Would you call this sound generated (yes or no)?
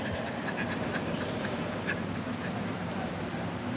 yes